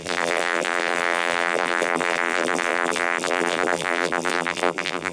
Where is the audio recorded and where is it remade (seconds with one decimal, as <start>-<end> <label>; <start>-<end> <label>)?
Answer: 0.0-5.1 remade